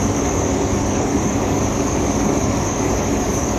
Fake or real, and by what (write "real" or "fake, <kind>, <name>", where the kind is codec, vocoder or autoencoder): fake, codec, DAC